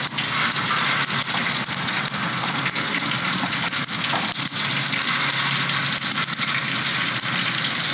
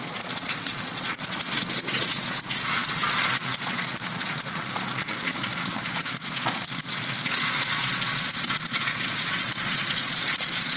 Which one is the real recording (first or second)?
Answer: first